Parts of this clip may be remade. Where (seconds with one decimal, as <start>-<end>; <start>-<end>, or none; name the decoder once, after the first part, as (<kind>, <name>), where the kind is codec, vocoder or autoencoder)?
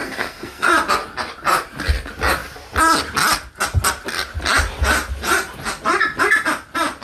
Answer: 0.0-0.7 (codec, SNAC)